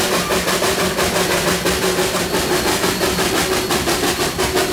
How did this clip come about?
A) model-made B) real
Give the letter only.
B